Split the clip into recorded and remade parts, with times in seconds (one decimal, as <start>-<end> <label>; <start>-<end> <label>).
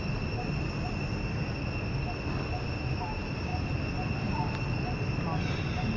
0.0-6.0 recorded